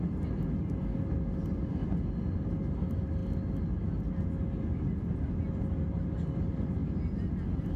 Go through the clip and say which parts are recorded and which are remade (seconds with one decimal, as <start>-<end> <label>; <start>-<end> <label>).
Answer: 0.0-7.8 recorded